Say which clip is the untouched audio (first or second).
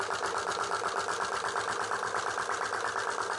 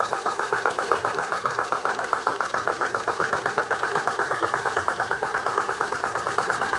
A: first